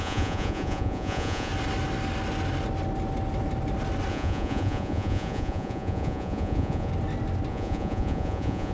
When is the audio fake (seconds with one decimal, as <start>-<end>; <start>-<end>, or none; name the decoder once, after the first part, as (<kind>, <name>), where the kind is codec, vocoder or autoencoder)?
0.0-1.5 (vocoder, Vocos); 4.1-6.9; 7.5-8.7

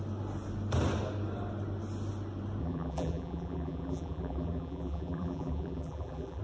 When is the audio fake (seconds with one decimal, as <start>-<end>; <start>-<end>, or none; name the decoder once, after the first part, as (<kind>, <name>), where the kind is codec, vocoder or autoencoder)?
2.6-6.4 (vocoder, BigVGAN v2)